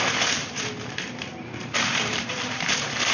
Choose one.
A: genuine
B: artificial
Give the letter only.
B